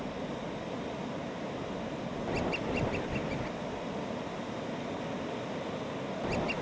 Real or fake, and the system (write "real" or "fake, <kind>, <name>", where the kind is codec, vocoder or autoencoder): real